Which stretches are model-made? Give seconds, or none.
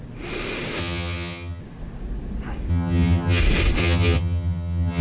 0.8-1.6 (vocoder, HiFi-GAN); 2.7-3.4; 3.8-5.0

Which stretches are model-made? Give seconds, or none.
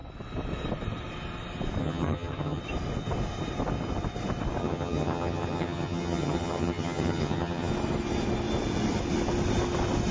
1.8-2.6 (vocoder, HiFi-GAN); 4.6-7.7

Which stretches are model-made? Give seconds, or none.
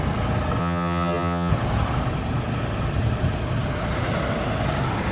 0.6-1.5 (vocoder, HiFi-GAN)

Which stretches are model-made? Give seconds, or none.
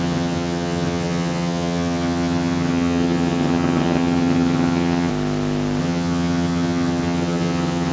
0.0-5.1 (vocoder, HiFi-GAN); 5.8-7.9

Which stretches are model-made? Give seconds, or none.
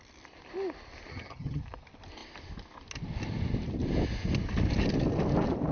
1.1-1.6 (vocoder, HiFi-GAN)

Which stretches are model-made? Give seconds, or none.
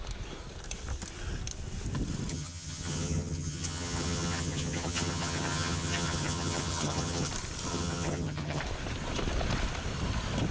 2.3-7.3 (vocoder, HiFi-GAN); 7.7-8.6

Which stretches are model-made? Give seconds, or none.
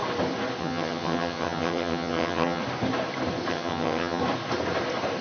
0.6-2.6 (vocoder, HiFi-GAN); 3.5-4.2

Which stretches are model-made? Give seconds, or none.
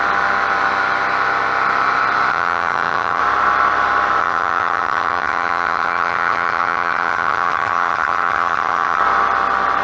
2.3-3.2 (vocoder, HiFi-GAN); 4.2-9.0